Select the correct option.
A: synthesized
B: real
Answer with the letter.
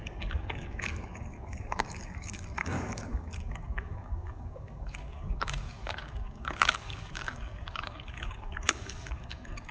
A